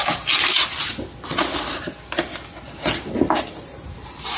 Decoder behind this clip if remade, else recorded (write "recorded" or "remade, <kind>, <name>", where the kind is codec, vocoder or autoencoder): recorded